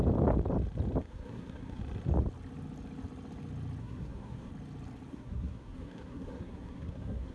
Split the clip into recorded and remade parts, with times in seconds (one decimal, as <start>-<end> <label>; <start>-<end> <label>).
0.0-1.0 recorded; 1.0-1.8 remade; 1.8-3.8 recorded; 3.8-4.5 remade; 4.5-5.1 recorded; 5.1-7.3 remade

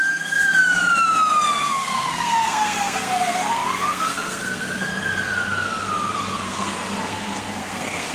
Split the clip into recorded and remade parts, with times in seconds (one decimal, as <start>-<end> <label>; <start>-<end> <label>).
0.0-0.6 remade; 0.6-1.6 recorded; 1.6-4.9 remade; 4.9-6.2 recorded; 6.2-8.1 remade

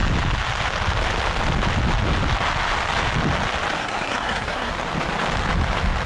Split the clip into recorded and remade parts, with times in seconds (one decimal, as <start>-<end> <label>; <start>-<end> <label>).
0.0-3.8 recorded; 3.8-4.7 remade; 4.7-6.1 recorded

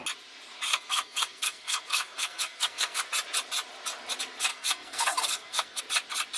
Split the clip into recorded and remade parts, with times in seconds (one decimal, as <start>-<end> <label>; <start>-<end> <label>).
0.0-0.7 recorded; 0.7-3.0 remade; 3.0-4.5 recorded; 4.5-5.8 remade; 5.8-6.4 recorded